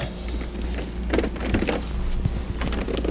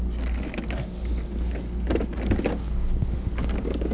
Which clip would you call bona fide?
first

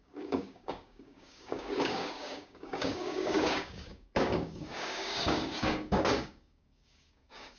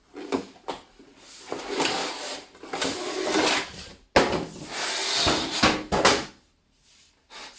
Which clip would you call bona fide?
second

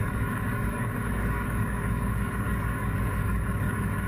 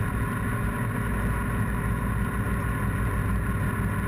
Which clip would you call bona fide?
second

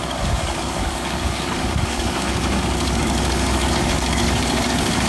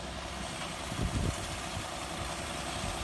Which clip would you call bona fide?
second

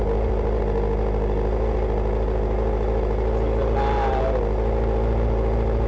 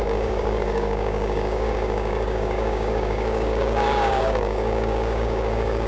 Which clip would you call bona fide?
first